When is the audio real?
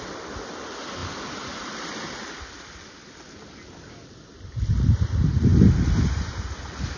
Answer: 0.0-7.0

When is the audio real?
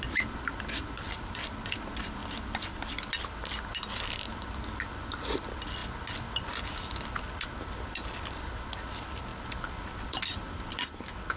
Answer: 2.2-2.7; 5.8-7.3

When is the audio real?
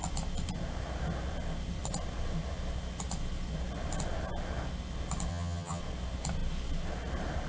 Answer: 0.0-5.3; 5.8-7.5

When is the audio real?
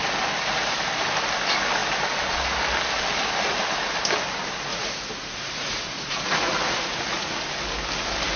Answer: 0.0-4.7; 7.4-8.4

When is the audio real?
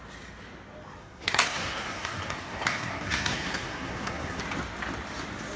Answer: 0.0-1.0; 4.4-5.6